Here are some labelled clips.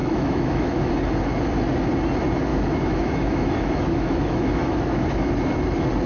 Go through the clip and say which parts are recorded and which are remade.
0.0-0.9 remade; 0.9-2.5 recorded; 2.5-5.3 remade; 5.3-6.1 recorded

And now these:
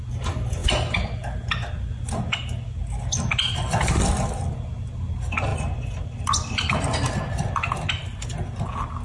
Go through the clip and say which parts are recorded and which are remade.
0.0-9.0 recorded

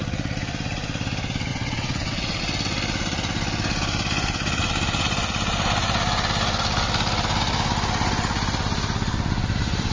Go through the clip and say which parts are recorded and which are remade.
0.0-1.5 recorded; 1.5-2.4 remade; 2.4-9.9 recorded

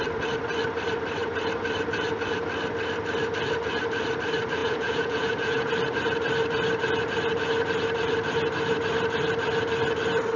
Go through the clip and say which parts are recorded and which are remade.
0.0-4.6 recorded; 4.6-5.7 remade; 5.7-10.4 recorded

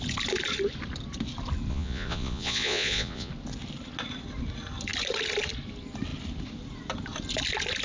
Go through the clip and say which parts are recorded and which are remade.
0.0-1.7 recorded; 1.7-3.3 remade; 3.3-7.8 recorded

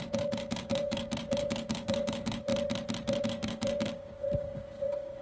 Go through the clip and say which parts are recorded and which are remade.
0.0-2.5 remade; 2.5-3.2 recorded; 3.2-5.2 remade

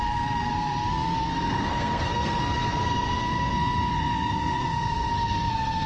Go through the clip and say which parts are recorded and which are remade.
0.0-5.9 remade

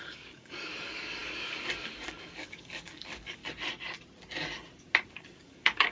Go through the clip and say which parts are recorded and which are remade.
0.0-3.4 remade; 3.4-5.1 recorded; 5.1-5.9 remade